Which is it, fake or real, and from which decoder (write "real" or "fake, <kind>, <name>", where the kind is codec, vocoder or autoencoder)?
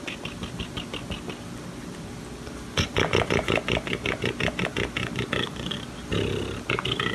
real